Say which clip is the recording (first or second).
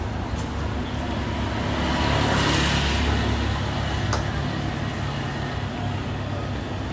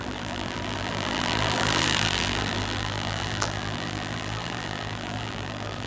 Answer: first